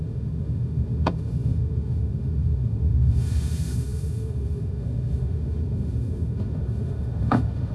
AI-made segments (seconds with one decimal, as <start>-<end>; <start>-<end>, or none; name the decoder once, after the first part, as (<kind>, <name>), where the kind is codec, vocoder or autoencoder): 0.0-7.7 (autoencoder, DAC-VAE)